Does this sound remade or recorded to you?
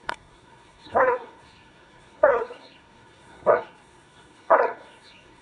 remade